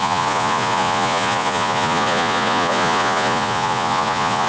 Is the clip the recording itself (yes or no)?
no